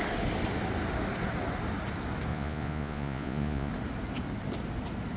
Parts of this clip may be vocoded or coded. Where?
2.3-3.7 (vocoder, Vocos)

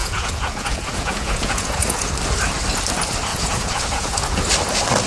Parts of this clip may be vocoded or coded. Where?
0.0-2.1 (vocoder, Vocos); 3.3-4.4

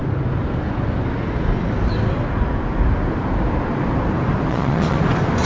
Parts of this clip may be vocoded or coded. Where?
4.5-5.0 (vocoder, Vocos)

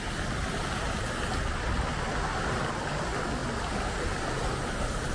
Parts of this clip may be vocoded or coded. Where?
none

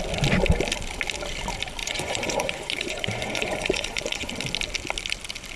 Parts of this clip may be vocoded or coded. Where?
1.8-4.3 (vocoder, Vocos)